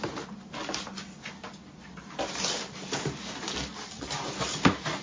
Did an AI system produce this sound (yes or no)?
no